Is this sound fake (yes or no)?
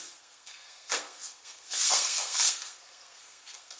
yes